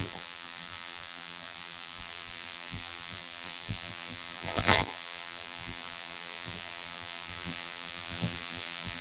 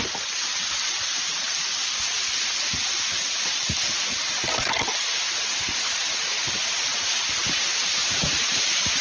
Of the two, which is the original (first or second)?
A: second